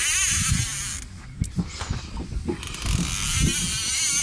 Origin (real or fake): real